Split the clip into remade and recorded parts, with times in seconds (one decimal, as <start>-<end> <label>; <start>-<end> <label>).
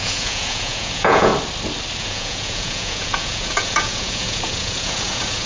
0.0-1.3 remade; 1.3-2.0 recorded; 2.0-5.5 remade